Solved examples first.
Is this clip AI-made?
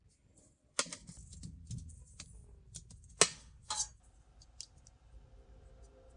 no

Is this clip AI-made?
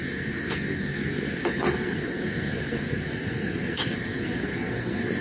yes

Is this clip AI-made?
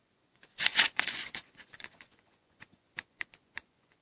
yes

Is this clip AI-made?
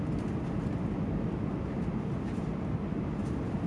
no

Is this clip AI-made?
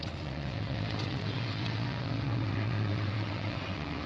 yes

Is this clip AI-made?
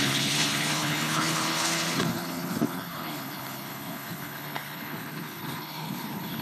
yes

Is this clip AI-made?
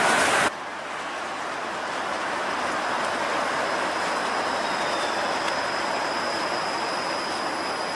no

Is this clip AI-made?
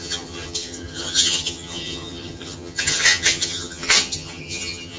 yes